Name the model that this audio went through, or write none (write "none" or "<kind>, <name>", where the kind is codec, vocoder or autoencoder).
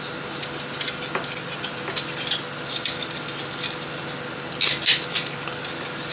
none